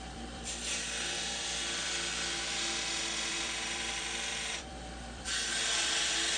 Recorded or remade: remade